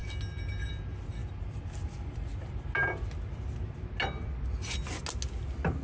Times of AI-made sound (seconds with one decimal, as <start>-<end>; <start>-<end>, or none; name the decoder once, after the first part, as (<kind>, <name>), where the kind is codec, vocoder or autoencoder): none